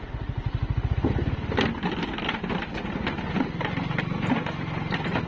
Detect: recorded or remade recorded